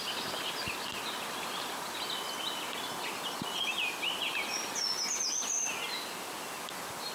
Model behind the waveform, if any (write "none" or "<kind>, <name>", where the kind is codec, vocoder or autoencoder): none